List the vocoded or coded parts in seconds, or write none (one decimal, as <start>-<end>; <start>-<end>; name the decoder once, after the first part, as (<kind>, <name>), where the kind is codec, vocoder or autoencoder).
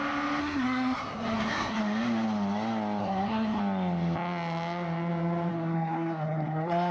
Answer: 0.4-1.8 (codec, SNAC); 3.0-3.6; 5.5-6.9